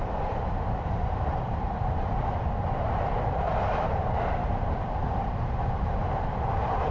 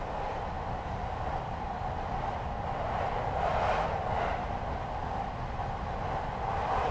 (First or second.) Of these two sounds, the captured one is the second